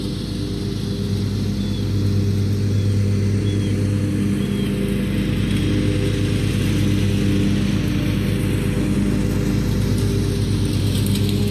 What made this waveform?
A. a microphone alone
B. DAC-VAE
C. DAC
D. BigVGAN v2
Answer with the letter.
A